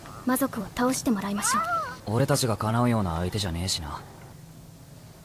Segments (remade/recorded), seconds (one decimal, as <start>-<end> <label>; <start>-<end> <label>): 0.0-2.7 remade; 2.7-5.2 recorded